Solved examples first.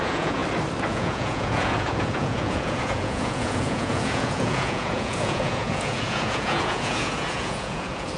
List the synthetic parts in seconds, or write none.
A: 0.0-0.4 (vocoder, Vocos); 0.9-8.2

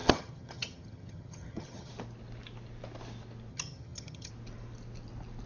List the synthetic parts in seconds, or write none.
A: 0.0-1.9 (vocoder, HiFi-GAN); 3.5-4.3